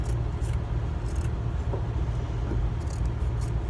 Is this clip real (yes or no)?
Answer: yes